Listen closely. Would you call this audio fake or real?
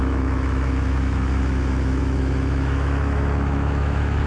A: fake